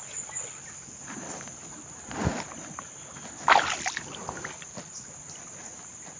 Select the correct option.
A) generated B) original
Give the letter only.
B